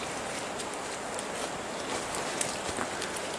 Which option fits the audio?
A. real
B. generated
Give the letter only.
A